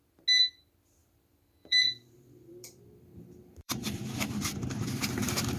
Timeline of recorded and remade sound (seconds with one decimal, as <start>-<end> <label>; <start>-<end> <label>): 0.0-1.0 recorded; 1.0-4.4 remade; 4.4-5.6 recorded